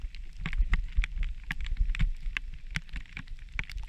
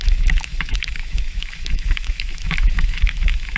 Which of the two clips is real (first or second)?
first